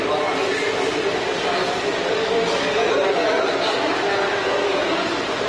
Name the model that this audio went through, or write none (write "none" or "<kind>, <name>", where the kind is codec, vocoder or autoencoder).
none